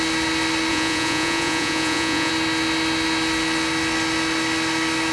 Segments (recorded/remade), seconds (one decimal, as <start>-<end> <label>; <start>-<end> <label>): 0.0-0.7 recorded; 0.7-2.3 remade; 2.3-5.1 recorded